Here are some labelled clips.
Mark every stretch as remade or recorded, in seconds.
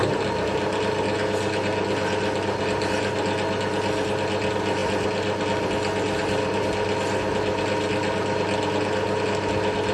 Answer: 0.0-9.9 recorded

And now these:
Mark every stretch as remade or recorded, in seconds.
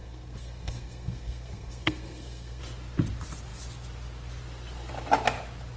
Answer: 0.0-2.6 remade; 2.6-5.8 recorded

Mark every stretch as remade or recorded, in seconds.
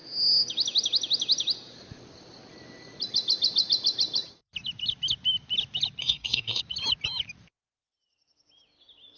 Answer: 0.0-6.0 recorded; 6.0-6.6 remade; 6.6-9.2 recorded